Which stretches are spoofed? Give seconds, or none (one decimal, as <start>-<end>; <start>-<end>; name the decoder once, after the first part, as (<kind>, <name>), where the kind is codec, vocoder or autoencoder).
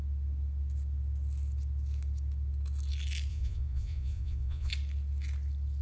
3.3-4.7 (vocoder, Vocos)